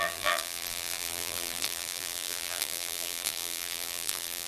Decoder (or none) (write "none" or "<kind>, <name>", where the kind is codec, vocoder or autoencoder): vocoder, BigVGAN v2